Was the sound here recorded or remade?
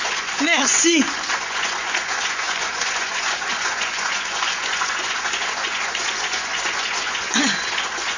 remade